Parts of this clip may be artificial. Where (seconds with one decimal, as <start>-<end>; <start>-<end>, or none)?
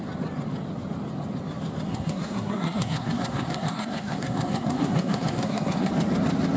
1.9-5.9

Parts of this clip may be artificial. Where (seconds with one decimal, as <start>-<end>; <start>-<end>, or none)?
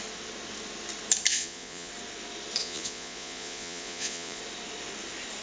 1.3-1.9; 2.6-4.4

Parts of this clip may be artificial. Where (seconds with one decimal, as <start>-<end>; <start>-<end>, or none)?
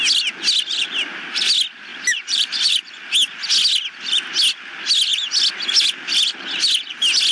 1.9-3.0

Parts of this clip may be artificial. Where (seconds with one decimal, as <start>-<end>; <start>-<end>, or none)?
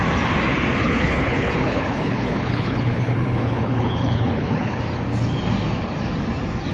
0.8-4.8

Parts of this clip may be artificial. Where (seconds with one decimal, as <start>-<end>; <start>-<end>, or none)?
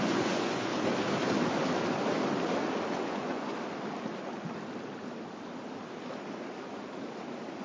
0.0-0.7; 2.9-3.5